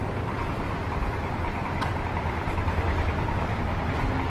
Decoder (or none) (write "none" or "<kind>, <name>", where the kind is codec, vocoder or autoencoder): none